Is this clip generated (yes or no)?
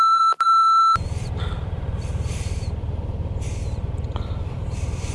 yes